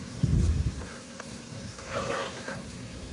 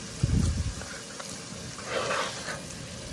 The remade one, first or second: first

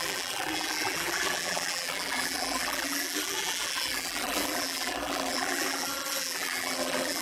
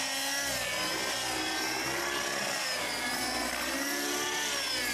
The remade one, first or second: first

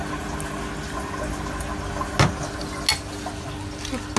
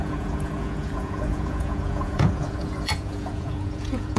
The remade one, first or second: second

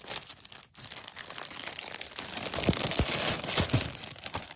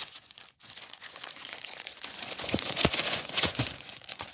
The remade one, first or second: second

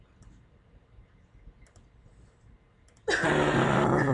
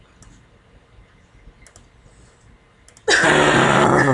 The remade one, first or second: first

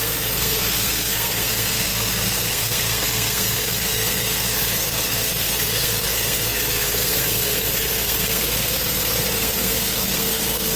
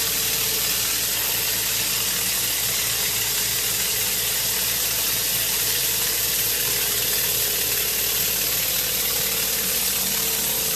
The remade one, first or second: first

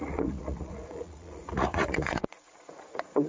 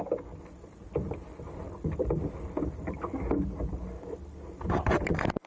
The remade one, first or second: first